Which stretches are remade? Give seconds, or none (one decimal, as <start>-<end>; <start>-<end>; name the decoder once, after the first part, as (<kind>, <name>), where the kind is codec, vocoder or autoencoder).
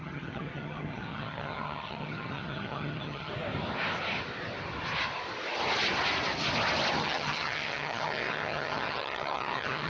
0.0-3.3 (vocoder, HiFi-GAN); 7.0-9.9